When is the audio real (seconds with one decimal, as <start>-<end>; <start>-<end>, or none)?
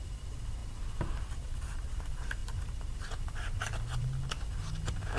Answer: 0.0-2.4; 4.3-5.2